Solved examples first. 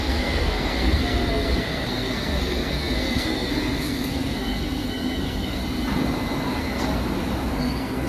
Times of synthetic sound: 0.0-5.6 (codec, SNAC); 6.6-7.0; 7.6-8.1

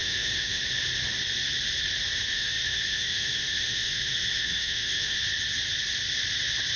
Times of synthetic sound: 0.0-0.6 (autoencoder, DAC-VAE); 2.3-5.2